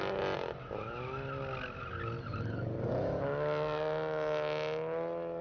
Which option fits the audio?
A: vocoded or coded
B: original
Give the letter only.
B